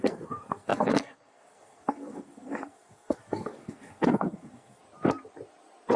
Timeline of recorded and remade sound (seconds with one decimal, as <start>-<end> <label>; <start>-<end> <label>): 0.0-4.8 remade; 4.8-6.0 recorded